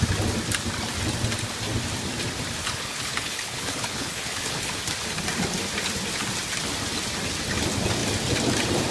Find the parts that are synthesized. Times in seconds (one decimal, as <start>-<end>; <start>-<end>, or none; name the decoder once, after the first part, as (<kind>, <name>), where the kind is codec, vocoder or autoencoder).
2.6-4.8 (codec, HILCodec)